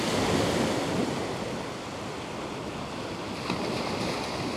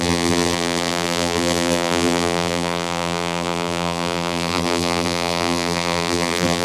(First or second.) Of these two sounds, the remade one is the second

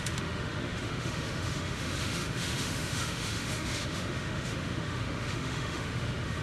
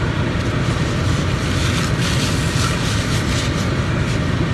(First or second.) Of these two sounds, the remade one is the first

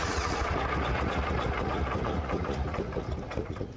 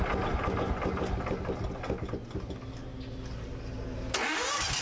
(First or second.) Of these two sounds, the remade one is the first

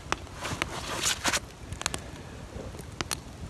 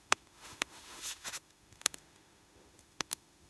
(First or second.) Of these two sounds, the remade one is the second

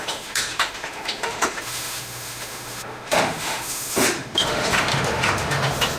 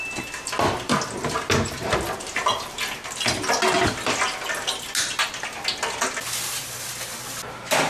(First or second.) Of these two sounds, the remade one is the first